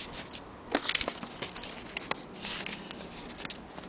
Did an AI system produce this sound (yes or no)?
no